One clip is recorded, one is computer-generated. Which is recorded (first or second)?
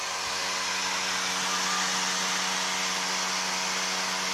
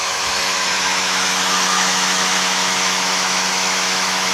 first